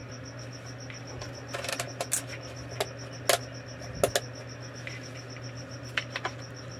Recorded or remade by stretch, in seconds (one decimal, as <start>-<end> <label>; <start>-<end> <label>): 0.0-6.8 recorded